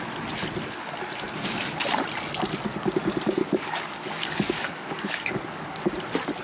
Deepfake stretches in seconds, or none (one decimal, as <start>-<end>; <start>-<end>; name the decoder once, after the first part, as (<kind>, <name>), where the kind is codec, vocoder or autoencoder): 3.4-5.9 (codec, DAC)